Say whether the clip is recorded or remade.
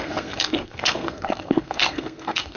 remade